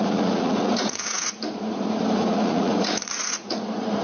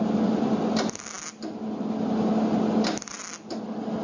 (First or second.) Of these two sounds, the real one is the second